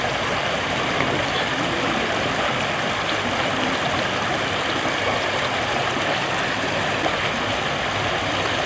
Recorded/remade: recorded